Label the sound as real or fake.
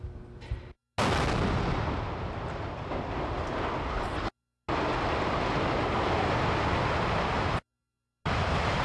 real